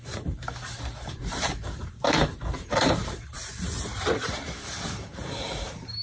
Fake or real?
fake